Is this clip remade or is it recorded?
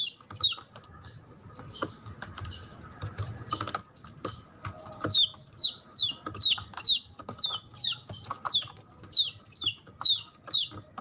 recorded